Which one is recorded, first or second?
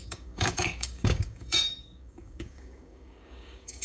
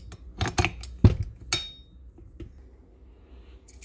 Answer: second